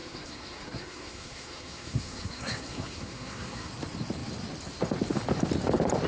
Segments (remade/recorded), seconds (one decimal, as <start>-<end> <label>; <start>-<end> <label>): 0.0-3.7 remade; 3.7-6.1 recorded

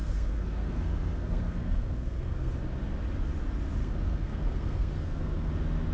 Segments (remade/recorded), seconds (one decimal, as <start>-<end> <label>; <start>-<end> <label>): 0.0-2.5 remade; 2.5-3.8 recorded; 3.8-5.5 remade; 5.5-5.9 recorded

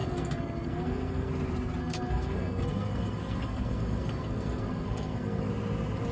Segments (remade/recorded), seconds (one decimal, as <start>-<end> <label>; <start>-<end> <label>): 0.0-1.3 remade; 1.3-1.8 recorded; 1.8-5.5 remade; 5.5-6.1 recorded

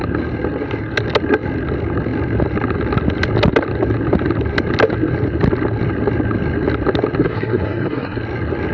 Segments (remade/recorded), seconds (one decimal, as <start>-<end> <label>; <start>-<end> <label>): 0.0-7.2 recorded; 7.2-8.2 remade; 8.2-8.7 recorded